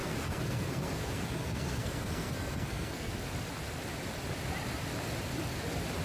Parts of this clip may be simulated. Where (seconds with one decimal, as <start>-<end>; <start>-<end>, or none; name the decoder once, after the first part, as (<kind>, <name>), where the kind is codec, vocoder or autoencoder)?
0.0-3.1 (codec, SNAC)